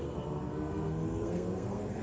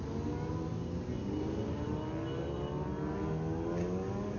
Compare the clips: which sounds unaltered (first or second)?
second